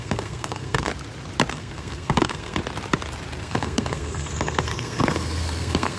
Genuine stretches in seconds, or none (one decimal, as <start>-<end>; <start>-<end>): 0.9-1.5; 2.6-3.4